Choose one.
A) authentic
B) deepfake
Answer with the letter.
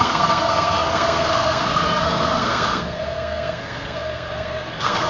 B